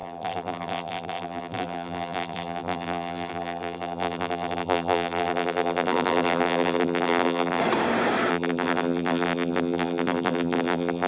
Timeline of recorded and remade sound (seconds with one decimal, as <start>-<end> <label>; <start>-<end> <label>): 0.0-7.6 remade; 7.6-8.3 recorded; 8.3-11.1 remade